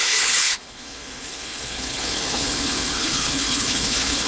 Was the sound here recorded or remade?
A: remade